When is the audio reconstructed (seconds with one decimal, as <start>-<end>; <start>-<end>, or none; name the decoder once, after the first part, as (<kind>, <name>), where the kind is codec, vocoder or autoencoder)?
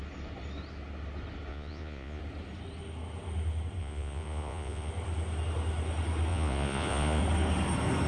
1.5-2.2 (vocoder, Vocos); 3.8-4.9; 6.3-7.2